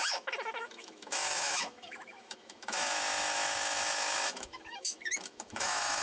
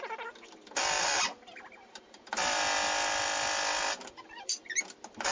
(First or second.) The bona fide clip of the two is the second